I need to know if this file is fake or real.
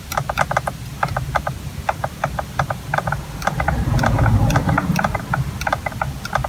real